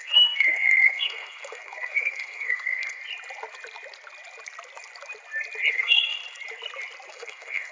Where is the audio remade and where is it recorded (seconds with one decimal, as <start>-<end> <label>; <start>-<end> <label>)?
0.0-3.0 remade; 3.0-5.7 recorded; 5.7-6.2 remade; 6.2-7.1 recorded; 7.1-7.7 remade